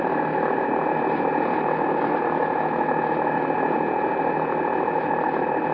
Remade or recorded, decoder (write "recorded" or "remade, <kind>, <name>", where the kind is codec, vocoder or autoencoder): recorded